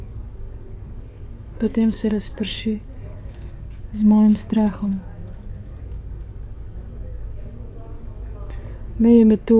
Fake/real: fake